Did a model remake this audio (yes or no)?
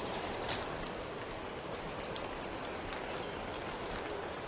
no